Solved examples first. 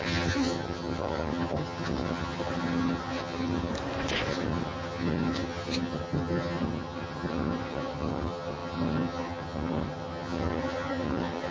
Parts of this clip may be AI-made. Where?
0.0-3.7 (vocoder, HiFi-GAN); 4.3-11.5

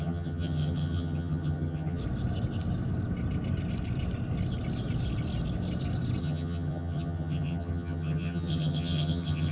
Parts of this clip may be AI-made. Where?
0.0-2.0 (vocoder, HiFi-GAN); 6.2-9.5

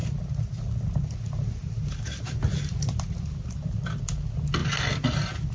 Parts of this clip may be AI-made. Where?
none

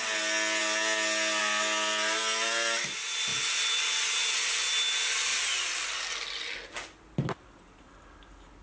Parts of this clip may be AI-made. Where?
none

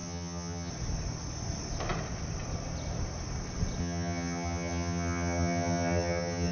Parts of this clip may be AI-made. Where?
0.0-0.7 (vocoder, HiFi-GAN); 3.8-6.5

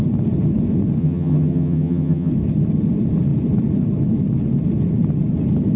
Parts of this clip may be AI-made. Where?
1.0-2.3 (vocoder, HiFi-GAN)

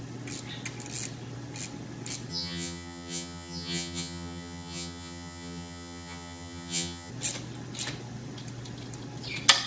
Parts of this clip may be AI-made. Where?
2.3-7.1 (vocoder, HiFi-GAN)

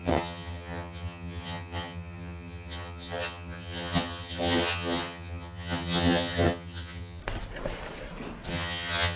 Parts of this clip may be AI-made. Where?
0.0-7.2 (vocoder, HiFi-GAN); 8.5-9.2